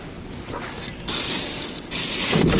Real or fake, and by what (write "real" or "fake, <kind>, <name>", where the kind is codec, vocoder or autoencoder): fake, vocoder, BigVGAN v2